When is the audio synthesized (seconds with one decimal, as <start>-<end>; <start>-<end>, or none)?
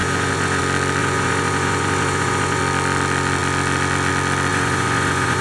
0.0-0.6; 1.0-2.6; 4.5-5.4